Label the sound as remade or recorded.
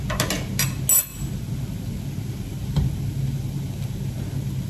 recorded